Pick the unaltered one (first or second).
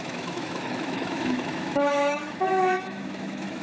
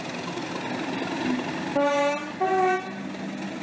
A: second